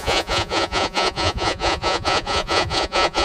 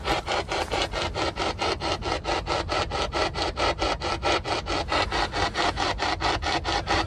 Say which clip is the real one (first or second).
second